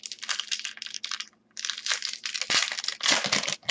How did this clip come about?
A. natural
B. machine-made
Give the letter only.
A